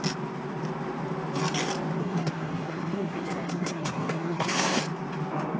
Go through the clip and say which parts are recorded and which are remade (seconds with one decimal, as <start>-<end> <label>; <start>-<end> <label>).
0.0-2.0 recorded; 2.0-4.8 remade; 4.8-5.6 recorded